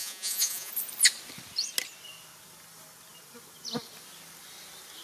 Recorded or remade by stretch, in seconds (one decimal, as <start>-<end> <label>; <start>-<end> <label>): 0.0-0.7 remade; 0.7-5.0 recorded